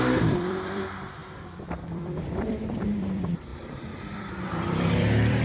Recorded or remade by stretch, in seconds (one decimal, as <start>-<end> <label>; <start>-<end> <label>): 0.0-5.4 remade